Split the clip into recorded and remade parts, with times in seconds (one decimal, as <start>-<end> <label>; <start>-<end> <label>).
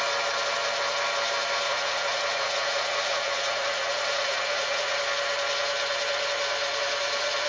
0.0-1.7 recorded; 1.7-5.0 remade; 5.0-7.5 recorded